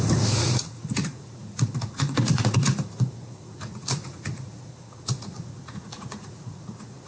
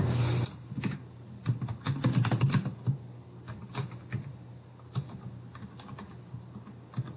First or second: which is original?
second